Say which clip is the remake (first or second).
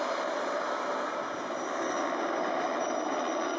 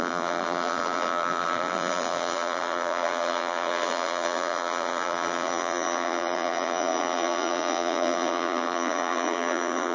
second